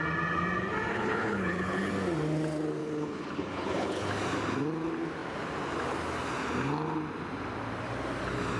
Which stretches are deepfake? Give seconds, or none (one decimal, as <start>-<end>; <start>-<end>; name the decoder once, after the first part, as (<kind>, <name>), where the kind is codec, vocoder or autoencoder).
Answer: 0.9-1.9 (codec, HILCodec); 2.8-4.1